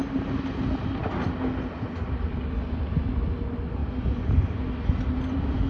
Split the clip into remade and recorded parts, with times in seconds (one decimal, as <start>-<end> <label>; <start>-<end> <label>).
0.0-5.7 recorded